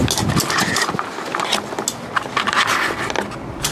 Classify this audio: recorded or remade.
recorded